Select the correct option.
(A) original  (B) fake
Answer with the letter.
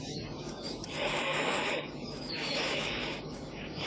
B